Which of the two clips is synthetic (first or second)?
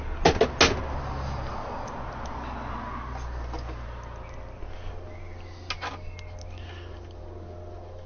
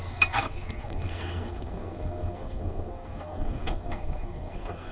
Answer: second